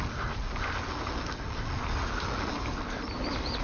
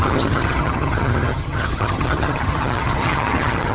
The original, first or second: first